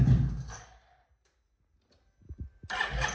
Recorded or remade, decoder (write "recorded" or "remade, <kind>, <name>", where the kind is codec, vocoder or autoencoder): recorded